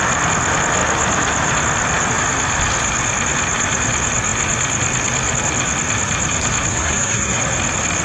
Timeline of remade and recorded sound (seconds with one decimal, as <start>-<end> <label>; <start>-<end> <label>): 0.0-6.7 recorded; 6.7-7.4 remade; 7.4-8.0 recorded